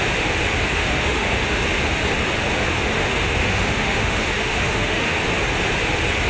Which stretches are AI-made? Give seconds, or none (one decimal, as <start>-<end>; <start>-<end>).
0.7-1.6; 3.0-5.2